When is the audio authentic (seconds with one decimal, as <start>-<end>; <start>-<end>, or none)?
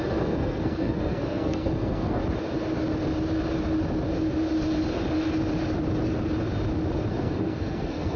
2.2-7.1